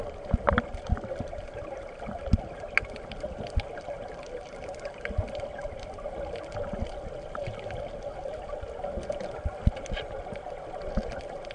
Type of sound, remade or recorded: recorded